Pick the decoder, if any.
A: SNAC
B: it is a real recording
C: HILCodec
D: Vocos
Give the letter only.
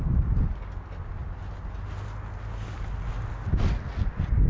B